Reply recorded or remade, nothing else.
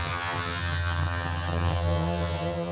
remade